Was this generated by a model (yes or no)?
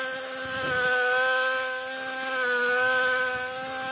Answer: no